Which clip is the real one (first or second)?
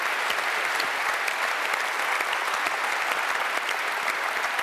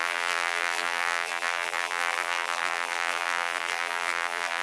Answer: first